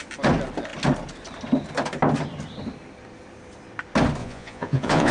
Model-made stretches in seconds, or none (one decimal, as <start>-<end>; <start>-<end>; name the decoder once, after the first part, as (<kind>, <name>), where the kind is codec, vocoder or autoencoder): 4.2-5.1 (vocoder, Vocos)